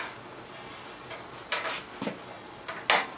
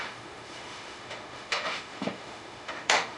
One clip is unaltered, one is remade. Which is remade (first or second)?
second